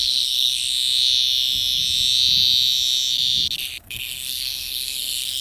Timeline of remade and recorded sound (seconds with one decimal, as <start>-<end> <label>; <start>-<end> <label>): 0.0-0.6 remade; 0.6-3.8 recorded; 3.8-5.4 remade